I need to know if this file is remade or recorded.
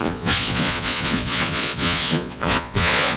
remade